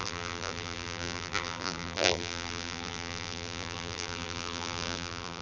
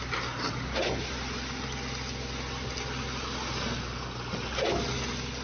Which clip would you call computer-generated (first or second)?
first